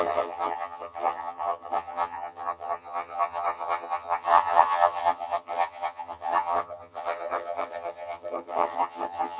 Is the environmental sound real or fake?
fake